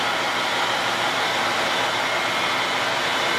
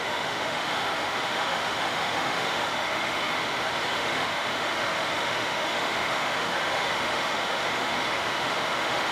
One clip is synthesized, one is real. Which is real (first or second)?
first